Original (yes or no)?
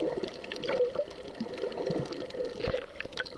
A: yes